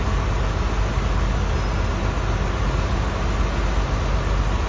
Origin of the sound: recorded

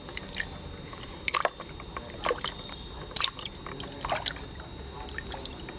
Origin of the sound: recorded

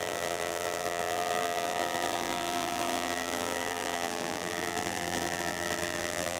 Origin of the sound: remade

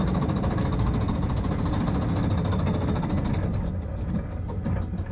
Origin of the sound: recorded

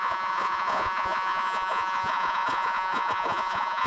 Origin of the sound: remade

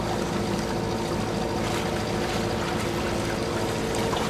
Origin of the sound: recorded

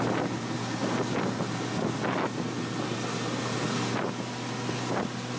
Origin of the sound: recorded